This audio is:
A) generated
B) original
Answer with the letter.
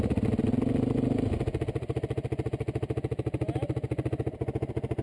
B